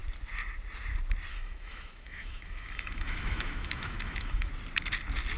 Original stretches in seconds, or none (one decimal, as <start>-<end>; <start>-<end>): 0.0-1.3; 4.5-5.4